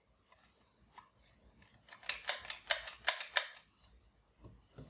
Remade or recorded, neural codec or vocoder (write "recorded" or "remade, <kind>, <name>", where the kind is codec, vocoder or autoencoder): recorded